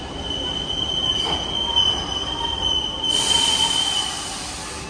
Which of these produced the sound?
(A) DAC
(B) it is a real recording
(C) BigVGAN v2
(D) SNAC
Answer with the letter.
B